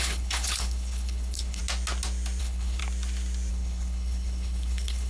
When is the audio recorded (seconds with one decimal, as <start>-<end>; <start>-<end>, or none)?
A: 1.6-2.4; 2.8-3.5